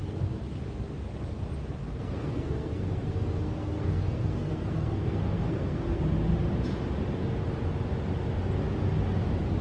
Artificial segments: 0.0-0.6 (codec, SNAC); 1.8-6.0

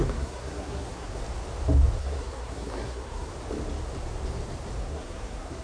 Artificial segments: 0.0-1.2 (codec, SNAC); 2.0-3.3; 4.8-5.6

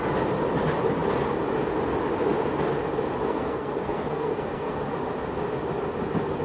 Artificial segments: 3.2-4.8 (codec, SNAC)

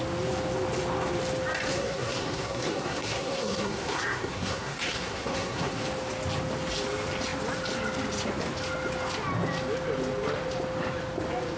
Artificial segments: 1.7-5.8 (codec, SNAC)

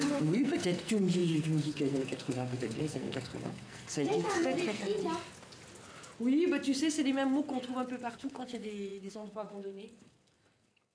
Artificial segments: 0.0-5.0 (codec, SNAC); 8.1-10.9

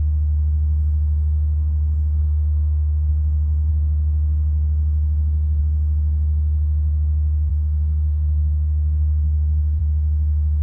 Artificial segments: 2.2-3.1 (codec, SNAC); 7.5-9.8

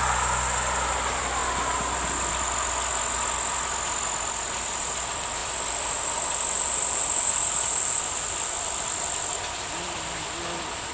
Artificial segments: none